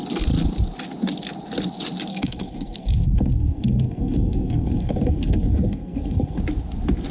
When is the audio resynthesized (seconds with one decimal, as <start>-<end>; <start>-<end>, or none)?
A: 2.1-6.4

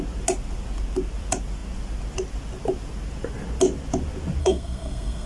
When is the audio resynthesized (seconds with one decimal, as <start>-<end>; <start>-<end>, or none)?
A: 4.4-5.3

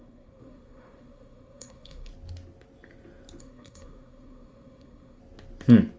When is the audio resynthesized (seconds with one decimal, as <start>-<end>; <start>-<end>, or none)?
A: 0.0-2.1; 3.4-5.2

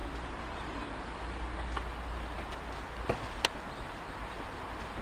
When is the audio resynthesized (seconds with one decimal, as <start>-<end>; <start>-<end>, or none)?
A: none